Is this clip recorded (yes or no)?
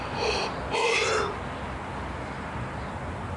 yes